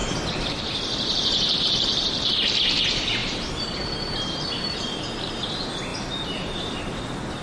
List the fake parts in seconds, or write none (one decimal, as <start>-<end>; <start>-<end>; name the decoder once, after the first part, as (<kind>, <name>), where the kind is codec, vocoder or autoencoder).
0.0-2.3 (vocoder, BigVGAN v2); 3.2-5.0; 5.9-6.8